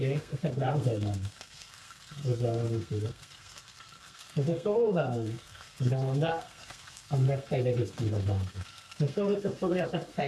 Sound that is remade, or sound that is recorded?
remade